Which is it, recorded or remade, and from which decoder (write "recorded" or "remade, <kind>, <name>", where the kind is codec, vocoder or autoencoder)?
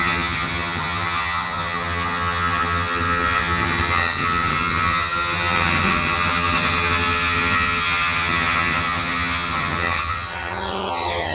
remade, vocoder, HiFi-GAN